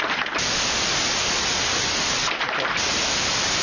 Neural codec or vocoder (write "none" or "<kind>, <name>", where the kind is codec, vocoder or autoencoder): none